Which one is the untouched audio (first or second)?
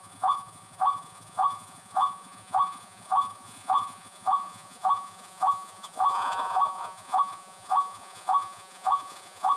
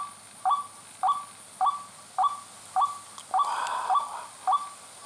second